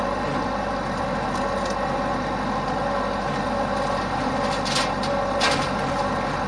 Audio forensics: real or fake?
real